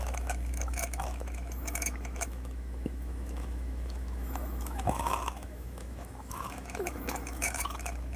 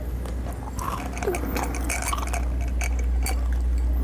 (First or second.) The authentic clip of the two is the second